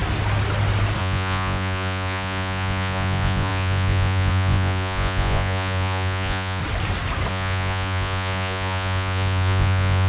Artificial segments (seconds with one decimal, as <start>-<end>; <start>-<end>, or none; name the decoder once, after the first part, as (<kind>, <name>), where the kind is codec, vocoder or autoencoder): 1.0-6.6 (vocoder, Vocos); 7.3-10.1